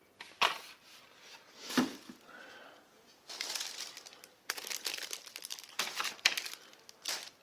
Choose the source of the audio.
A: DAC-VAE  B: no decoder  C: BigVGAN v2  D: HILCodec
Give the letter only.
B